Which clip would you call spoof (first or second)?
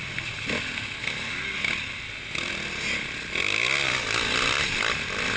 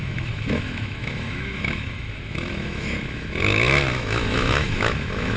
second